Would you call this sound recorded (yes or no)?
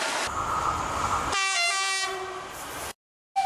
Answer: yes